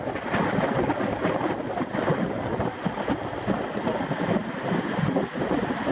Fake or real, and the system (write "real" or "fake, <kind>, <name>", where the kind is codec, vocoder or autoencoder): real